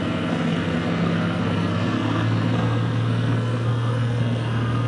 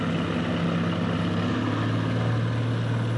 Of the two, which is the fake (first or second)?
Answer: first